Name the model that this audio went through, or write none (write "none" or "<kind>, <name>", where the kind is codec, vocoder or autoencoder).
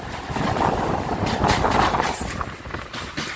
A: none